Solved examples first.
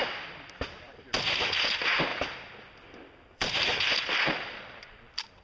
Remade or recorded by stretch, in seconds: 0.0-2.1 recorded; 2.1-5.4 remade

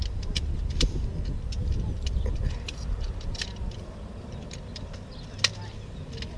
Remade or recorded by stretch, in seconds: 0.0-1.6 recorded; 1.6-4.9 remade; 4.9-6.4 recorded

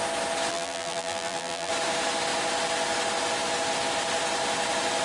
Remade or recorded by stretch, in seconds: 0.0-0.5 recorded; 0.5-1.7 remade; 1.7-5.0 recorded